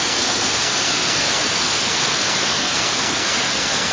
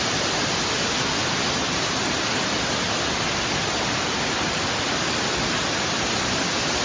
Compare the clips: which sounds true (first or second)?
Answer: second